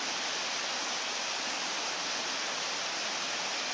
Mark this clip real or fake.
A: real